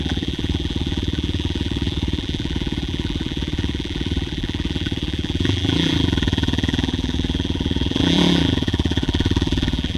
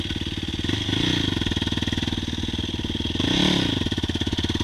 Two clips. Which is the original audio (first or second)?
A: second